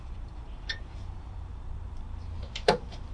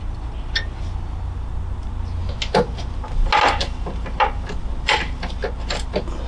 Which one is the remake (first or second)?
first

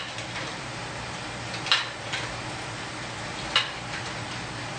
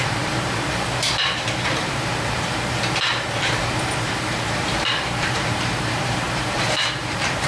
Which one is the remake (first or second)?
second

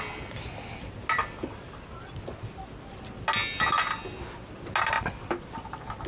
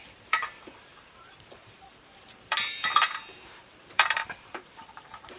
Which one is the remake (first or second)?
second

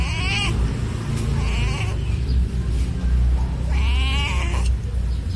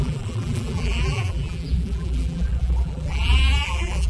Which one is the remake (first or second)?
second